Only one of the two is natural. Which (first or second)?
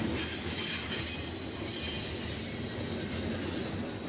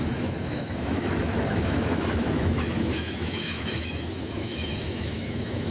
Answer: first